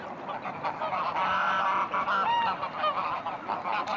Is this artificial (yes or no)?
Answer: no